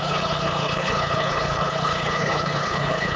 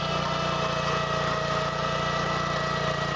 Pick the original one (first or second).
second